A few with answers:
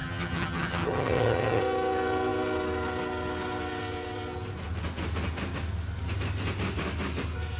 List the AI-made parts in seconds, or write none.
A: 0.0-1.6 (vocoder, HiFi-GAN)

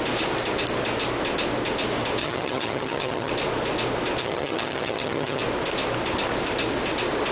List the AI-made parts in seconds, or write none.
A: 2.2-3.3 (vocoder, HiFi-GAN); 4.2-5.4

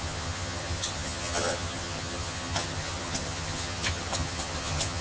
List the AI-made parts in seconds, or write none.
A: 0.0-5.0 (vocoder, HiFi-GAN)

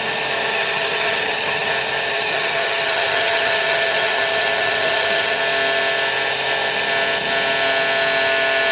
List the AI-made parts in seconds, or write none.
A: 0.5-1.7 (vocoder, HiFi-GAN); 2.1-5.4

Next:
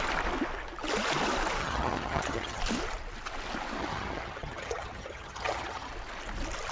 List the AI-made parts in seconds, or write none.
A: 1.6-2.6 (vocoder, HiFi-GAN); 3.8-5.9

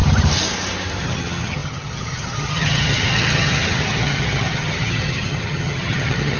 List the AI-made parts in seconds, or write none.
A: 1.0-6.4 (vocoder, HiFi-GAN)